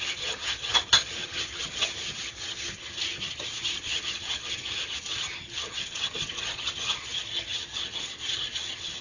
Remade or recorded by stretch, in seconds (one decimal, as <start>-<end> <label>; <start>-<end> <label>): 0.0-9.0 remade